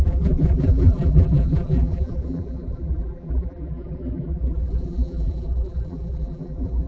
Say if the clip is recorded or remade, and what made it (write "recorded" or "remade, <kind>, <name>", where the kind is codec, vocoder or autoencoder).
remade, vocoder, BigVGAN v2